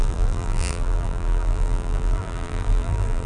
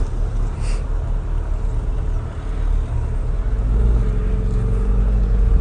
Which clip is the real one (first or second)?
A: second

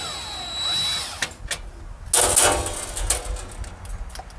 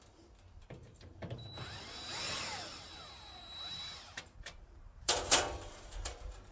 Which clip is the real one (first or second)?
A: first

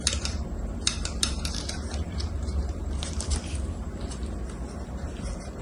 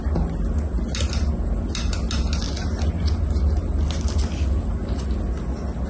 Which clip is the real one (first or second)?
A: second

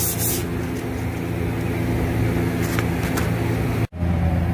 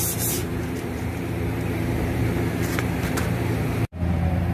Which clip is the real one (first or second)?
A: first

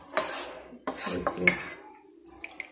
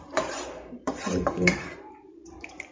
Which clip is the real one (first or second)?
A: first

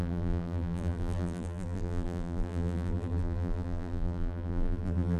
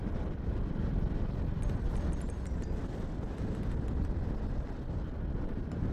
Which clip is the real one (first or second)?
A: second